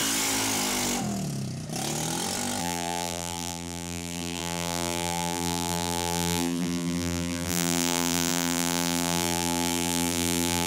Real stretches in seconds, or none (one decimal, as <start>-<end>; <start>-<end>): 0.0-2.6